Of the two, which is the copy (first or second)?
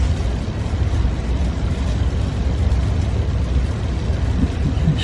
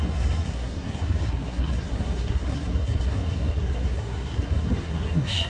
second